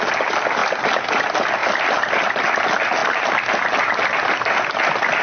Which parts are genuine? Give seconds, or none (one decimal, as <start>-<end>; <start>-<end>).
0.0-5.2